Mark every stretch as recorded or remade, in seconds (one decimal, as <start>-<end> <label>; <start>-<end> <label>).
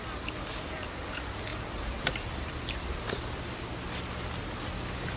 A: 0.0-5.2 recorded